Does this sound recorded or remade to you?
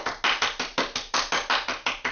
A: recorded